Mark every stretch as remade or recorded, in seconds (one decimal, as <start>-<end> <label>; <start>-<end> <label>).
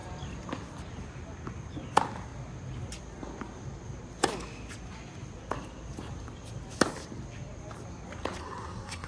0.0-8.4 recorded; 8.4-9.1 remade